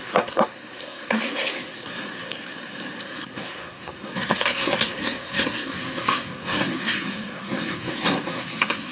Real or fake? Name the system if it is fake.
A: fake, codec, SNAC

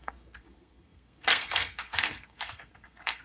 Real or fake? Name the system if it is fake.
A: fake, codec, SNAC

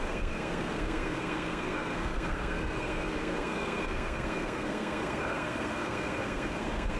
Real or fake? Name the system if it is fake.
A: fake, codec, SNAC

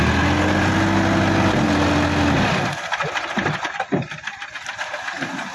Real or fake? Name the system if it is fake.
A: real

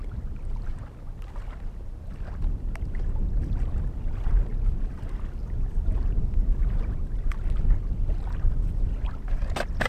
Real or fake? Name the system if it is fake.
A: real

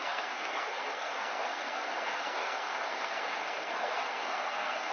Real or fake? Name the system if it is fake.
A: fake, codec, SNAC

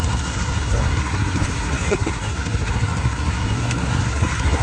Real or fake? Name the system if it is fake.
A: fake, codec, SNAC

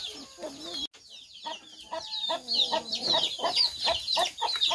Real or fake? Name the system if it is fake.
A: real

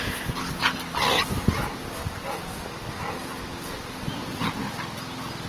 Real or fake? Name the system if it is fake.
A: real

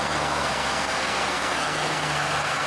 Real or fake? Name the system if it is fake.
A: fake, codec, SNAC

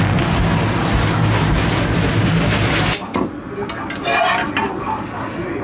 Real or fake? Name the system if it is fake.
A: real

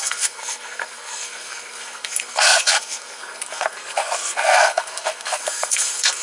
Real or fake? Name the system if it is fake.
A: fake, codec, SNAC